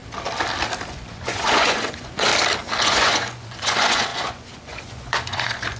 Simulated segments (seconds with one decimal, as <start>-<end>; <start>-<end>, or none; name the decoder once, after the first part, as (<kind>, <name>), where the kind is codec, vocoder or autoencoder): 0.9-2.3 (vocoder, Vocos); 2.8-5.8